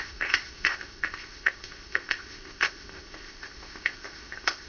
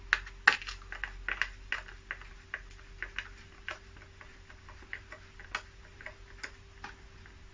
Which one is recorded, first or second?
second